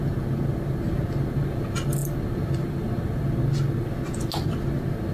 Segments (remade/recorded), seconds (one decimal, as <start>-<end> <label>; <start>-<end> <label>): 0.0-5.1 recorded